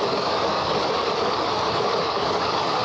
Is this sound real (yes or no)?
no